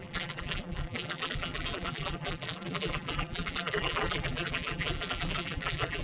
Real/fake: fake